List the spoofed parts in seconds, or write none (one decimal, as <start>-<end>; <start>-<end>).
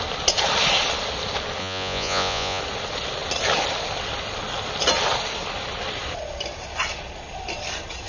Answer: 1.6-2.6